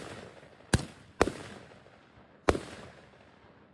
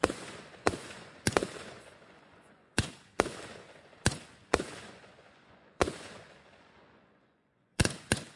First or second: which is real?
first